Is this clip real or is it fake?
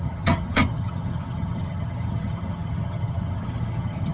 fake